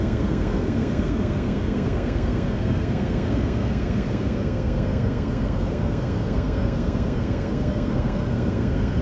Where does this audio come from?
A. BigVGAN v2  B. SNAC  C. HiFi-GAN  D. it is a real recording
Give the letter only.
B